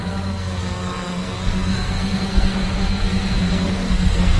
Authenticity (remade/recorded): remade